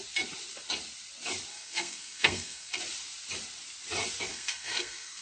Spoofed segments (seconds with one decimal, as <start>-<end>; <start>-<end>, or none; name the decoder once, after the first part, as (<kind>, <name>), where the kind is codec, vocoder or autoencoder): 1.5-2.8 (codec, SNAC); 4.3-5.2